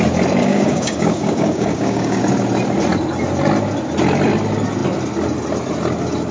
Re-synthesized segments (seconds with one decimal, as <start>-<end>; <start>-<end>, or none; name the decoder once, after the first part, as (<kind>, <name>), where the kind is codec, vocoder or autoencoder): 0.4-2.2 (codec, DAC)